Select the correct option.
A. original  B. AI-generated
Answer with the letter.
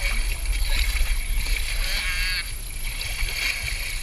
A